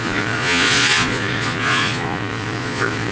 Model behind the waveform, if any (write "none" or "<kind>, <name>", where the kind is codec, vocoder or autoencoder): vocoder, Vocos